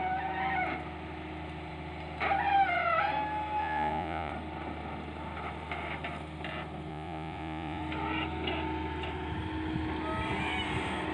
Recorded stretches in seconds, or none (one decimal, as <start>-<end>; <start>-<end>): 0.0-3.6; 4.3-6.9; 7.8-11.1